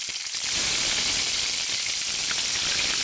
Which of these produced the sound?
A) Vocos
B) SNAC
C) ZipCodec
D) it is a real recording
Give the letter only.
D